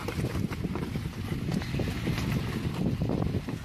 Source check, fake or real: real